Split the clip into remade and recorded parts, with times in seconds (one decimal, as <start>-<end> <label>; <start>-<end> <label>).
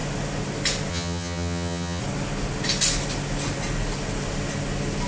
0.0-0.9 recorded; 0.9-2.0 remade; 2.0-5.1 recorded